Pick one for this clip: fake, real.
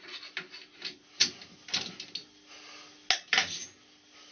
real